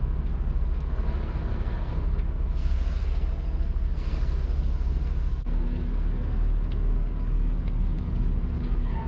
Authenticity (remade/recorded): remade